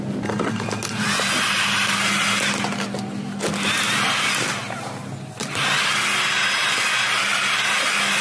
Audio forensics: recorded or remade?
recorded